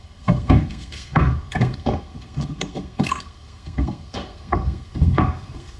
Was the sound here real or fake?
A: fake